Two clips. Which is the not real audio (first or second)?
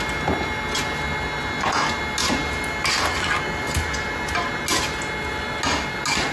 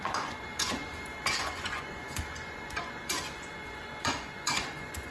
second